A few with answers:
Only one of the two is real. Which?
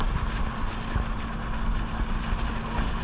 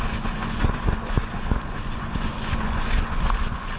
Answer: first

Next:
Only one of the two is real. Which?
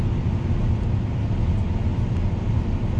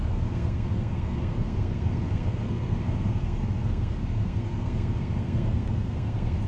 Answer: first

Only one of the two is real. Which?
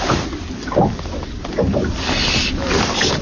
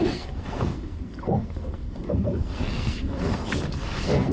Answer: first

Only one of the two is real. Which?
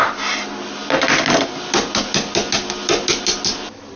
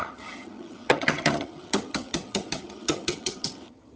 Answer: first